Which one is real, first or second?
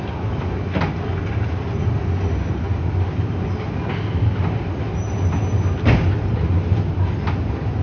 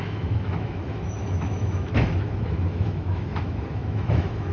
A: first